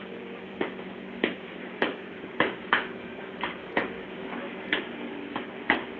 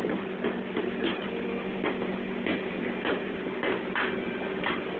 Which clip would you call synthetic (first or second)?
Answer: first